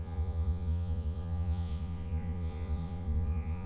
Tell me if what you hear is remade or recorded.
remade